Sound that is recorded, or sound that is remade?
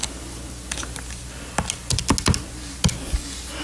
recorded